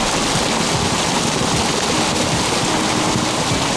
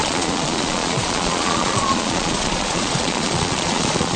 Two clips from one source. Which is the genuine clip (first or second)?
first